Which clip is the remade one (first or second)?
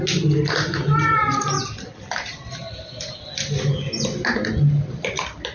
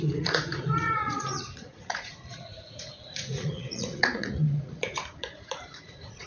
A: second